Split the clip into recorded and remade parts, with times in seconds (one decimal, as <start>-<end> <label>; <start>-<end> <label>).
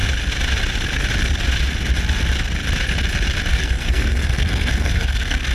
0.0-3.5 recorded; 3.5-5.5 remade